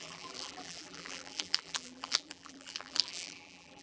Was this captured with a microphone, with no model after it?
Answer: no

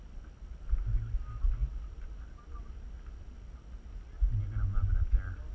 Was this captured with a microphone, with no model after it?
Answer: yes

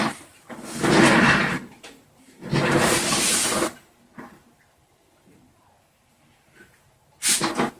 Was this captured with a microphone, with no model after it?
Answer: no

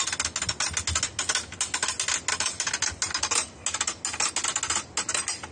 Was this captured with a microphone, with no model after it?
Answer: yes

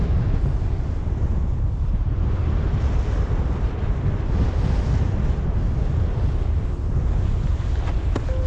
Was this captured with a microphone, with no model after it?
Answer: yes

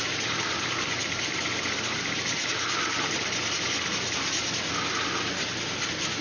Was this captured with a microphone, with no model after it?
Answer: yes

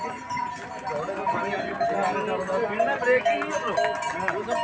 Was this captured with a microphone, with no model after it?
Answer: yes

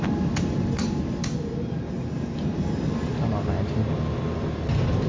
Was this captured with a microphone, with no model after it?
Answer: yes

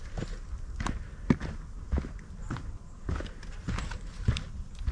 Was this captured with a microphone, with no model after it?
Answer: yes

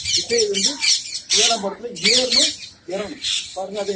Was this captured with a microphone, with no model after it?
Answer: yes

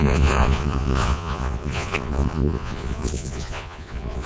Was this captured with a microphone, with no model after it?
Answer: no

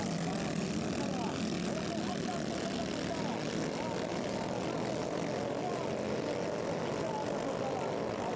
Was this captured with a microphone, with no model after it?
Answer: yes